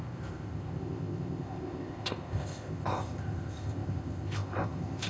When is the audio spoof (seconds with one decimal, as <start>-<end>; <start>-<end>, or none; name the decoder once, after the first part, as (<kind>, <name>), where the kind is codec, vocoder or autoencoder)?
0.0-5.1 (codec, ZipCodec)